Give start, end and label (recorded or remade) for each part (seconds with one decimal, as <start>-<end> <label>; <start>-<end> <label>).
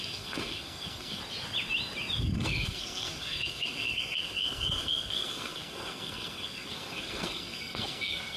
0.0-1.2 remade; 1.2-2.2 recorded; 2.2-8.4 remade